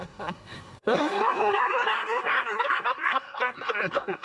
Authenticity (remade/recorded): remade